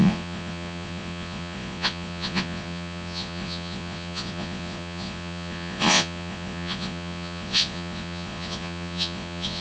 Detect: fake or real fake